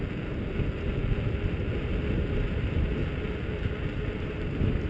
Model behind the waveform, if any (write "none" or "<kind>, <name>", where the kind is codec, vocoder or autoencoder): none